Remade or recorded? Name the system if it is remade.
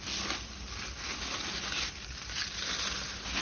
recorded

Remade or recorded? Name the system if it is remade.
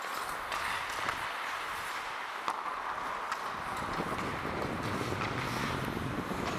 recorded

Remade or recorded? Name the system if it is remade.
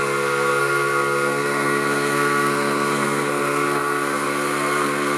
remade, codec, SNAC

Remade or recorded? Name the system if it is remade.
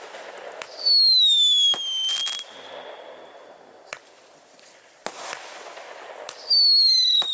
recorded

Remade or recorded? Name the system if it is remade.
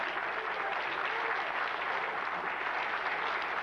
recorded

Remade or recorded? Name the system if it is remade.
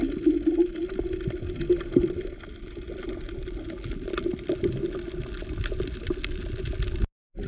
recorded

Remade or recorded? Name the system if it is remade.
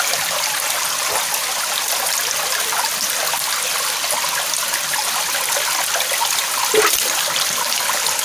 recorded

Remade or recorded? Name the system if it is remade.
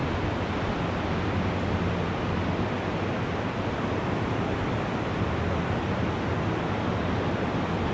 recorded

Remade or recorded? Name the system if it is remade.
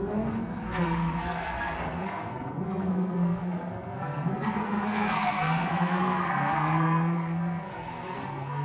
remade, codec, SNAC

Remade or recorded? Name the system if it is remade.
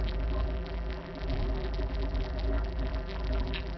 remade, vocoder, BigVGAN v2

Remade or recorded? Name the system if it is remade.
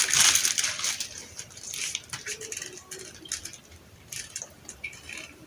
recorded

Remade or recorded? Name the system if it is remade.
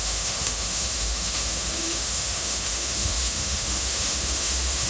remade, autoencoder, DAC-VAE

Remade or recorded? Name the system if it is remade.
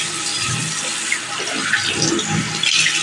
recorded